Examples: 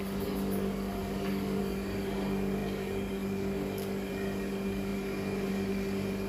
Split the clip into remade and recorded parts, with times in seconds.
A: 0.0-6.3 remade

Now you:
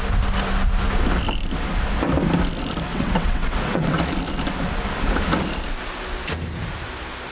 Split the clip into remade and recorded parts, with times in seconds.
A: 0.0-2.9 recorded; 2.9-4.0 remade; 4.0-7.3 recorded

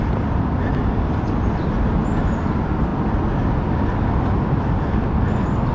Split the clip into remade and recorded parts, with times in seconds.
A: 0.0-5.7 recorded

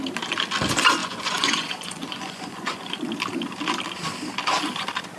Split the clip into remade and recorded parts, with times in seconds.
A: 0.0-1.0 recorded; 1.0-2.9 remade; 2.9-5.2 recorded

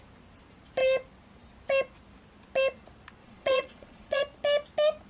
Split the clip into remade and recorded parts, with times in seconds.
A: 0.0-3.2 recorded; 3.2-4.2 remade; 4.2-5.1 recorded

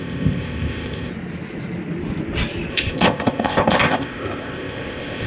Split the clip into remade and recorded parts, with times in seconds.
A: 0.0-1.1 remade; 1.1-2.7 recorded; 2.7-5.3 remade

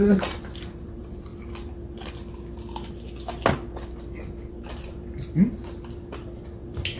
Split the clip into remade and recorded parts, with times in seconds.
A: 0.0-1.3 remade; 1.3-4.5 recorded; 4.5-5.6 remade; 5.6-7.0 recorded

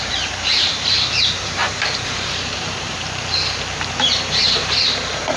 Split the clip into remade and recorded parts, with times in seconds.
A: 0.0-5.4 remade